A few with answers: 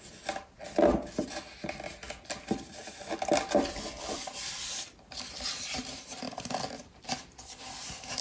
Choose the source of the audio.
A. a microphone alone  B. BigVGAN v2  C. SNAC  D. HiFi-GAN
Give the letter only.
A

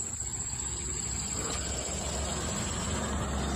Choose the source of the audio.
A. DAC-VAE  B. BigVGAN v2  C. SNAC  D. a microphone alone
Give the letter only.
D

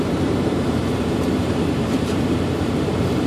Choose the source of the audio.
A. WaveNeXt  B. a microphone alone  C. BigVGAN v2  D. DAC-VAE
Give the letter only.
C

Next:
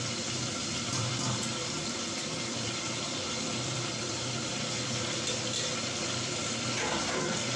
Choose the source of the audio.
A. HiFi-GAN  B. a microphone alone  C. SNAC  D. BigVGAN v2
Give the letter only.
D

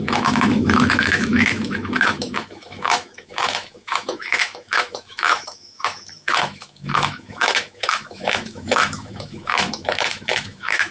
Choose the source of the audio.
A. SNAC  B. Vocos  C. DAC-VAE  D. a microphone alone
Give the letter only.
C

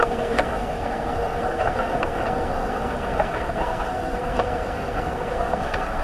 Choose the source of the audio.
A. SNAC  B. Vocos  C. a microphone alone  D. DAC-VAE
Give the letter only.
A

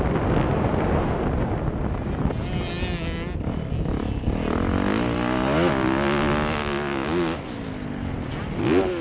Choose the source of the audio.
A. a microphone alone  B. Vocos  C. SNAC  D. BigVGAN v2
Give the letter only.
A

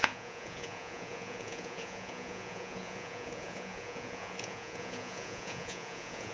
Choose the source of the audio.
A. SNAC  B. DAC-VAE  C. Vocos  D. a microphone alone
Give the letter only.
C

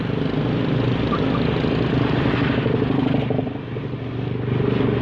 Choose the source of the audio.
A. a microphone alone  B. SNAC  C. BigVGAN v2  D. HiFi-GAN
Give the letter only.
A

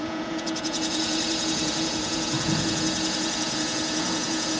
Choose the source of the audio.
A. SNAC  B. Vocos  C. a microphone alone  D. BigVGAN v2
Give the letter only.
B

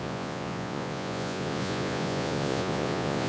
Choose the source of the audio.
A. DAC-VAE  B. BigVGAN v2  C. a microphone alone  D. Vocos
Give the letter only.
D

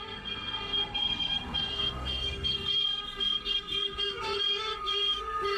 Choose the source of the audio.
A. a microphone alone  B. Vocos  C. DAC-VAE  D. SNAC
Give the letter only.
D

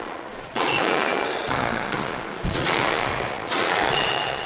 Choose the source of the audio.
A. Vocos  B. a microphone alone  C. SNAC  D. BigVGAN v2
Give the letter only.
A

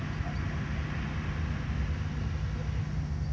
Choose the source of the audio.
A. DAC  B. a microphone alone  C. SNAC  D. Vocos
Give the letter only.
B